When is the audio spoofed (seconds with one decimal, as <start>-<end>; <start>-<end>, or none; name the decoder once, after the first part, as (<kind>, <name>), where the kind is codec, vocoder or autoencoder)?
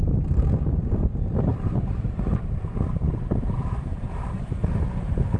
1.5-4.4 (vocoder, BigVGAN v2)